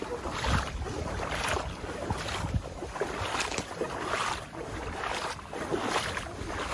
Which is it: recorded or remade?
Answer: recorded